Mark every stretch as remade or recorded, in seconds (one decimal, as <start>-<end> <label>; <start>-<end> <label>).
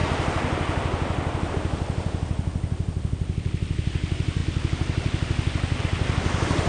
0.0-6.7 recorded